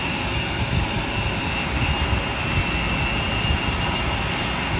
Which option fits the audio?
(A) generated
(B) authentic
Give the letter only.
B